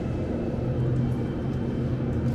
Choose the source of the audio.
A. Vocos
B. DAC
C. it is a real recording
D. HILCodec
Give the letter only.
C